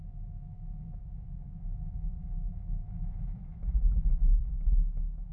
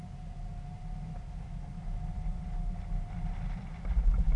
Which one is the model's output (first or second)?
first